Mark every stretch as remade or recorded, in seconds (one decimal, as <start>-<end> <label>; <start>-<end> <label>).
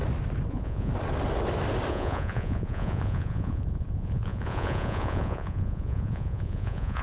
0.0-0.5 recorded; 0.5-0.9 remade; 0.9-1.9 recorded; 1.9-7.0 remade